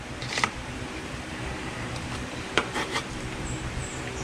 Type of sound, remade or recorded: remade